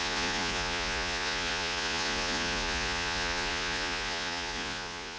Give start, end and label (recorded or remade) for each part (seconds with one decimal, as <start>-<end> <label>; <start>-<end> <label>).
0.0-5.2 remade

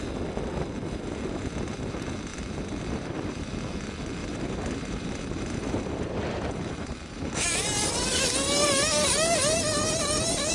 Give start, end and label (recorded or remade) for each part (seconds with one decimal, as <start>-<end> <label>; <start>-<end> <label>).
0.0-2.3 recorded; 2.3-3.6 remade; 3.6-4.2 recorded; 4.2-7.9 remade; 7.9-10.5 recorded

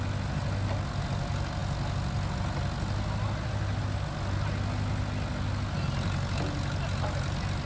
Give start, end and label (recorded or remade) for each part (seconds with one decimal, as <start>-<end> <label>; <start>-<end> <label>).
0.0-7.7 recorded

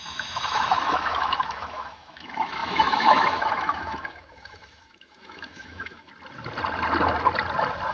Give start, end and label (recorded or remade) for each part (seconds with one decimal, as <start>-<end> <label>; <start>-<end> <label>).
0.0-6.1 remade; 6.1-7.9 recorded

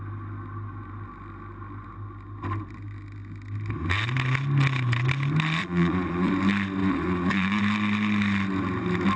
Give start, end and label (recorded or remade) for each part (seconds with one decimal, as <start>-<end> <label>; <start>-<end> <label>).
0.0-5.6 recorded; 5.6-6.3 remade; 6.3-6.8 recorded; 6.8-7.6 remade; 7.6-9.2 recorded

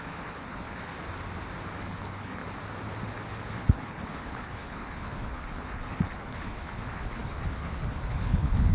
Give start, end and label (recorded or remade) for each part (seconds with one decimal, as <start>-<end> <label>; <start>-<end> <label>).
0.0-0.9 remade; 0.9-1.8 recorded; 1.8-2.4 remade; 2.4-3.5 recorded; 3.5-8.7 remade